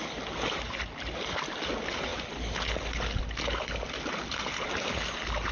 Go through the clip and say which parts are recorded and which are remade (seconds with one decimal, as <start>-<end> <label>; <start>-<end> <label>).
0.0-5.5 recorded